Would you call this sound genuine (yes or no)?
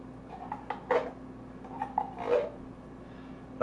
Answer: yes